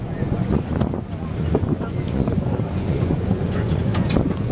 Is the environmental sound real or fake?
fake